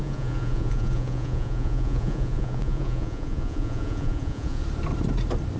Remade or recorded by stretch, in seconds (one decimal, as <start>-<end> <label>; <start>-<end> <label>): 0.0-4.6 remade; 4.6-5.6 recorded